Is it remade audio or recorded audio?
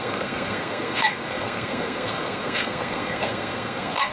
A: remade